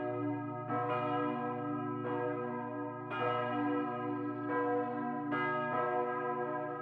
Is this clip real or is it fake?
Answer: real